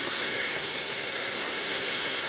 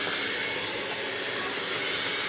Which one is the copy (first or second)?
first